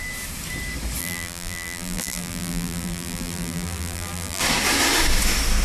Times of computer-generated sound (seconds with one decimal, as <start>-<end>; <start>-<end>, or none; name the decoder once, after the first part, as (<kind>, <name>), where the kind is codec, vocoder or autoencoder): 1.0-4.4 (vocoder, BigVGAN v2)